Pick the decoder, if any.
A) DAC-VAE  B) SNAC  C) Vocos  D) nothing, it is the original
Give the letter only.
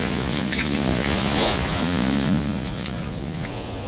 C